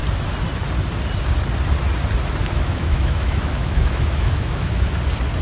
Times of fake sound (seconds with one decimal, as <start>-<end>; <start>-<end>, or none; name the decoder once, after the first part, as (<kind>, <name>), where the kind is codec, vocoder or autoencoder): 2.4-4.9 (autoencoder, DAC-VAE)